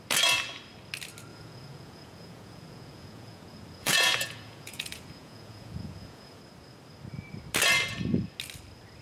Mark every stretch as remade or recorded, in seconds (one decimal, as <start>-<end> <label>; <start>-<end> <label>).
0.0-1.3 recorded; 1.3-6.4 remade; 6.4-9.0 recorded